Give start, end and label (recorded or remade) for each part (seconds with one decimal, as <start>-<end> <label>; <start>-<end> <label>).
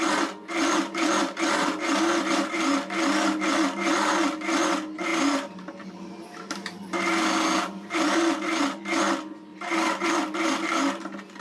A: 0.0-1.2 recorded; 1.2-2.3 remade; 2.3-5.1 recorded; 5.1-8.6 remade; 8.6-9.5 recorded; 9.5-10.1 remade; 10.1-11.4 recorded